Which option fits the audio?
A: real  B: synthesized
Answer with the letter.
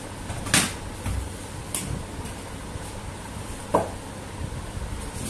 A